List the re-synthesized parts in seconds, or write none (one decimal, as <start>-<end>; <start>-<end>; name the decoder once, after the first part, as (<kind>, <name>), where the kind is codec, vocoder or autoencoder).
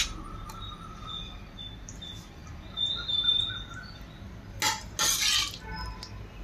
none